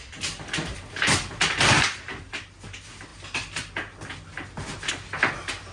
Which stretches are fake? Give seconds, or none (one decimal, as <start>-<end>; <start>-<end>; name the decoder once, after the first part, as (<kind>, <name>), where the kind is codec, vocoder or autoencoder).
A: none